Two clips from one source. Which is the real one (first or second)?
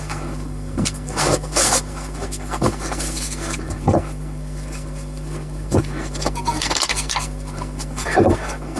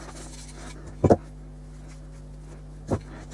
second